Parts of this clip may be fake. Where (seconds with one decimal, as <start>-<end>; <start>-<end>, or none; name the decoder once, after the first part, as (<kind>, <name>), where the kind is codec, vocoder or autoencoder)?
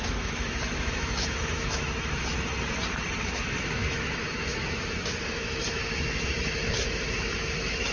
0.0-2.5 (autoencoder, DAC-VAE); 3.2-7.9